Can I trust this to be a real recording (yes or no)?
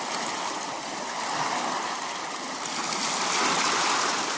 yes